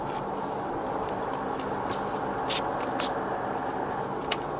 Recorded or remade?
recorded